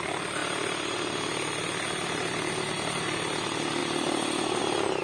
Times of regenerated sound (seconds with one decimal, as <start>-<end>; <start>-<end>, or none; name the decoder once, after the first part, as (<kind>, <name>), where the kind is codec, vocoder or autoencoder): none